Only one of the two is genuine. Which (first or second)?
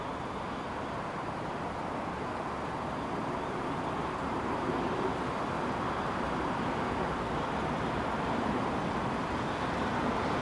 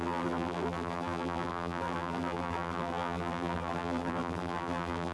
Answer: first